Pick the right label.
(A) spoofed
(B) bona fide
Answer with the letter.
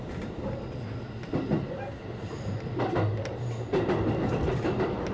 B